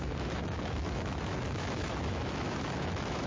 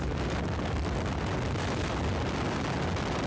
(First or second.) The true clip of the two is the second